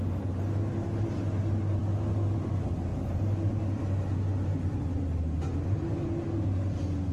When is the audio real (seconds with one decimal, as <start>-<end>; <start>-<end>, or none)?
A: 0.0-2.9; 3.5-7.1